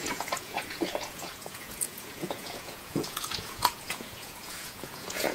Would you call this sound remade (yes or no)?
yes